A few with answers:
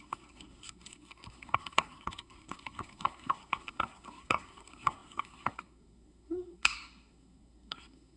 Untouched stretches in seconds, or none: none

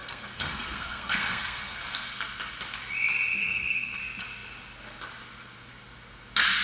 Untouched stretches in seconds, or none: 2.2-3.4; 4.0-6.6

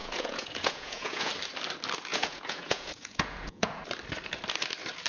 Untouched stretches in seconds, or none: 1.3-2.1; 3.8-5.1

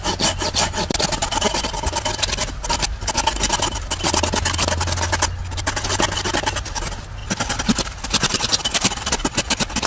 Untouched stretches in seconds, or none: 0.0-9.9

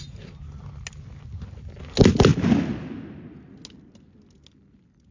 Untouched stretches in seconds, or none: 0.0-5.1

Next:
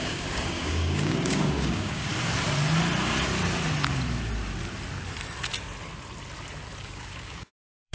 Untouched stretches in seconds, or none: 2.1-6.8